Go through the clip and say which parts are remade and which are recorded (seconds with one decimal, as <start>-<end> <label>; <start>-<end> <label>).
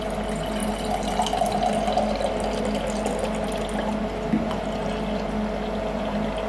0.0-6.5 recorded